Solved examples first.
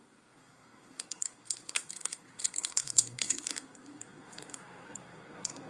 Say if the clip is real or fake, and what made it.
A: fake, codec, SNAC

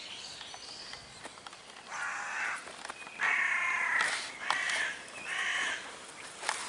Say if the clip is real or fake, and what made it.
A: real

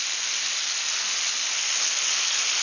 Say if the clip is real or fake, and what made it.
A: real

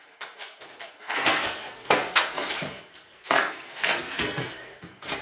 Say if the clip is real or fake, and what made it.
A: fake, codec, SNAC